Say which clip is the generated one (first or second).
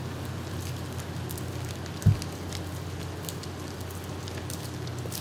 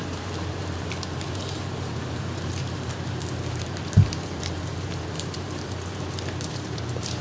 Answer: second